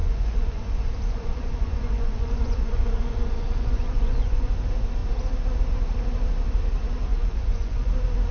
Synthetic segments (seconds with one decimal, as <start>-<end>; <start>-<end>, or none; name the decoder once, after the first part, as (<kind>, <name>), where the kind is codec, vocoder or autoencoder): 0.0-4.5 (vocoder, Vocos); 7.1-7.9